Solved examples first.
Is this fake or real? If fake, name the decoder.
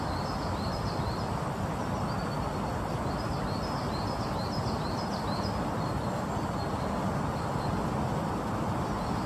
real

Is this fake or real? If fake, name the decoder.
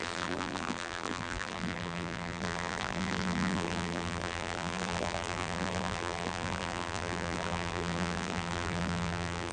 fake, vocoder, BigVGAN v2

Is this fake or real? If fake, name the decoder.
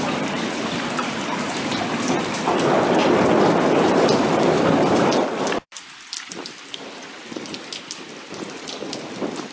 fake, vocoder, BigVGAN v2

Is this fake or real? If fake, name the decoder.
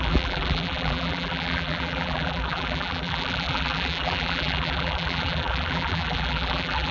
fake, vocoder, BigVGAN v2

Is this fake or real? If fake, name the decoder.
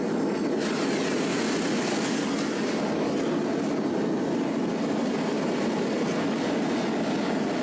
real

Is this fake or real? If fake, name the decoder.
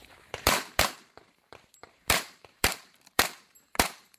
fake, vocoder, BigVGAN v2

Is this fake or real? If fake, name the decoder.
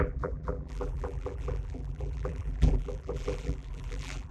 fake, vocoder, BigVGAN v2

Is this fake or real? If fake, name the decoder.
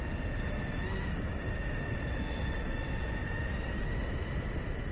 real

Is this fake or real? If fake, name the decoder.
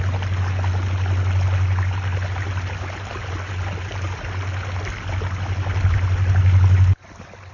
real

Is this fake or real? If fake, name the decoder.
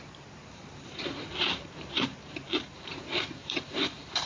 fake, vocoder, BigVGAN v2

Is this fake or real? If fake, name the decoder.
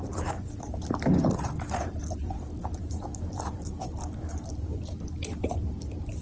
fake, vocoder, BigVGAN v2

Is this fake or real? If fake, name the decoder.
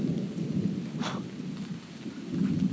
real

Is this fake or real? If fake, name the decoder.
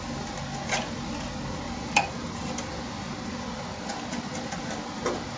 real